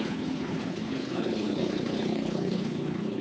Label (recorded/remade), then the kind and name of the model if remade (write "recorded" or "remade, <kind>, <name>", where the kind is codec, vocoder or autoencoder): remade, codec, HILCodec